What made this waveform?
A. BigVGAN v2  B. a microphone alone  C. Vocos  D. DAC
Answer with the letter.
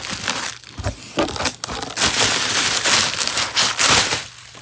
B